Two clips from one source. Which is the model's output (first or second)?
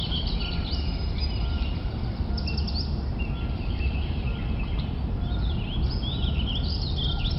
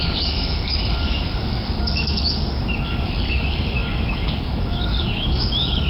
second